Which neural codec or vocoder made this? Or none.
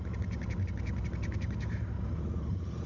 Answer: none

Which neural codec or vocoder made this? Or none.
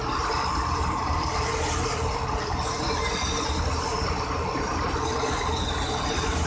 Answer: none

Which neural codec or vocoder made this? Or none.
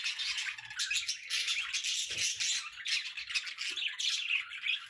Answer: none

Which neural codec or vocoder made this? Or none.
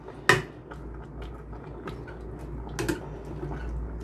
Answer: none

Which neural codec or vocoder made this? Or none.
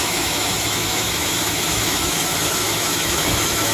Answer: autoencoder, DAC-VAE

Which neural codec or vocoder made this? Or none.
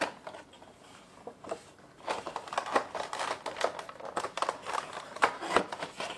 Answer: none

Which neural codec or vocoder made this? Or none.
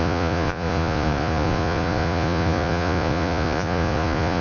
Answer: vocoder, Vocos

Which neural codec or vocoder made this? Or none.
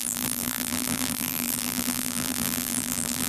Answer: vocoder, BigVGAN v2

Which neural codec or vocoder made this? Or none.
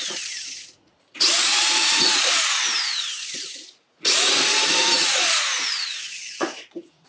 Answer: vocoder, Vocos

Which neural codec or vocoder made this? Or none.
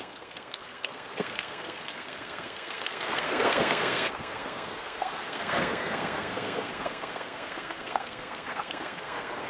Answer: codec, SNAC